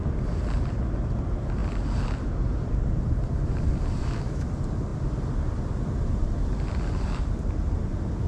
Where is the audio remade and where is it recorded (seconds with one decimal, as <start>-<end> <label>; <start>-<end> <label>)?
0.0-4.0 recorded; 4.0-4.5 remade; 4.5-8.3 recorded